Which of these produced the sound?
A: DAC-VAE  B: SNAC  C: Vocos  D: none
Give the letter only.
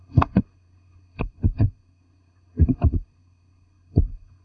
B